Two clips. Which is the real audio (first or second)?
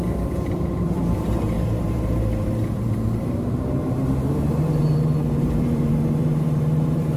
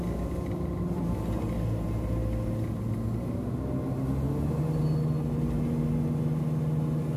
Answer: second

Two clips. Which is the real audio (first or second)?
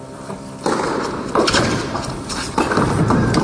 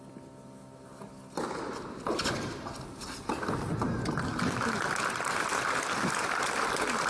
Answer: second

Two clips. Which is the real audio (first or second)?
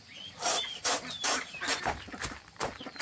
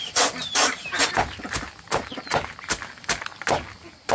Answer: second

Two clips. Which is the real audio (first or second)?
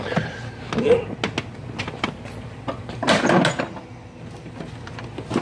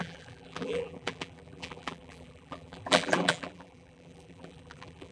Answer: first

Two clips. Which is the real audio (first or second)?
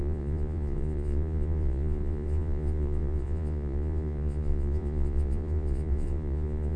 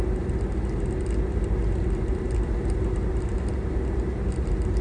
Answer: second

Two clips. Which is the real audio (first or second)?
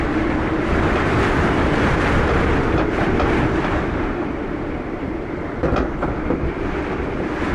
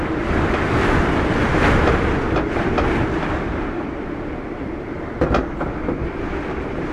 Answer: second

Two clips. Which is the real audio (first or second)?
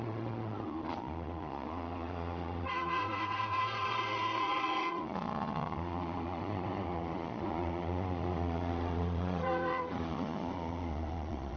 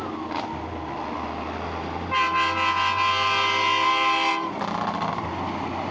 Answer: second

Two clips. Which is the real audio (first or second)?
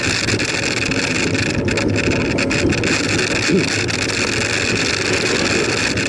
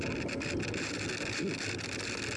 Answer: first